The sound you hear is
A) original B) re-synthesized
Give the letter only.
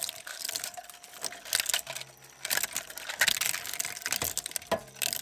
A